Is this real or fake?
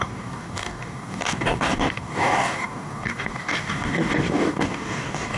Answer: fake